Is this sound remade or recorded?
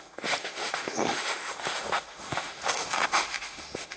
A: remade